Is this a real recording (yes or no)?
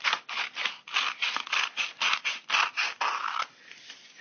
yes